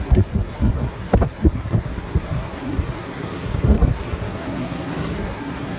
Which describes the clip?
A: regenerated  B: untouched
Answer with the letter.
A